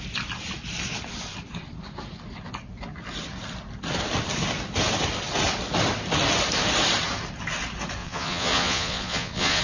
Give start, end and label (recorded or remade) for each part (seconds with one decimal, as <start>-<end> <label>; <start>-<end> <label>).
0.0-8.0 recorded; 8.0-9.6 remade